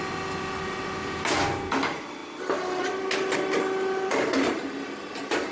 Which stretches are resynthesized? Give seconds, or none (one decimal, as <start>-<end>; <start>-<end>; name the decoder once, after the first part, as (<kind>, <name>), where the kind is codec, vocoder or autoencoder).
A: none